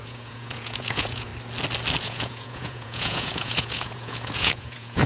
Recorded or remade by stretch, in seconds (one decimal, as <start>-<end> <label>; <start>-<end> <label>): 0.0-1.3 remade; 1.3-2.0 recorded; 2.0-5.1 remade

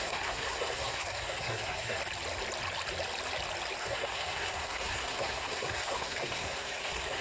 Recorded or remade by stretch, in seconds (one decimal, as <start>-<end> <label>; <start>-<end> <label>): 0.0-2.0 remade; 2.0-3.8 recorded; 3.8-7.2 remade

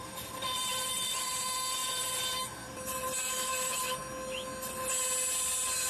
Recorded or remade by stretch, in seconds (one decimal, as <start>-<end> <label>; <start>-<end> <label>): 0.0-4.0 remade; 4.0-5.9 recorded

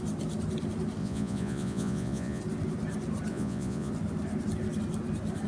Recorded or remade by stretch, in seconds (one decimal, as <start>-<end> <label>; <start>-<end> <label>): 0.0-1.0 recorded; 1.0-2.4 remade; 2.4-3.3 recorded; 3.3-3.9 remade; 3.9-5.5 recorded

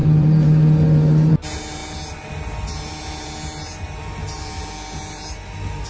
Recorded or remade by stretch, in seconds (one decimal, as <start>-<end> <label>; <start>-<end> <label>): 0.0-1.3 remade; 1.3-5.9 recorded

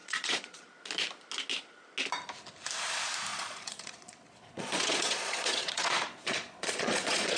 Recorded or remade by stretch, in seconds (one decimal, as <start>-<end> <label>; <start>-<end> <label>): 0.0-0.7 remade; 0.7-3.3 recorded; 3.3-7.4 remade

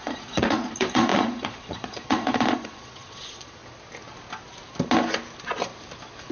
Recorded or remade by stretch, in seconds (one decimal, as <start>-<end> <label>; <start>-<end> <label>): 0.0-3.6 remade; 3.6-6.3 recorded